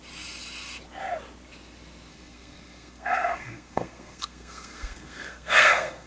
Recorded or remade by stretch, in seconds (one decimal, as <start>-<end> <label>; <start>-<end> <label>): 0.0-2.1 recorded; 2.1-6.1 remade